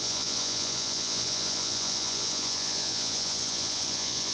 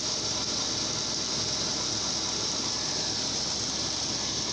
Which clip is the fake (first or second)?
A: first